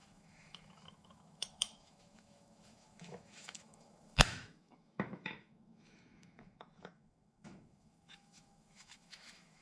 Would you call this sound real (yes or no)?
no